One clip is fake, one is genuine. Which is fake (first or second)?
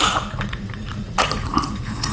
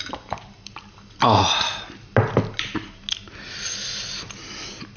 first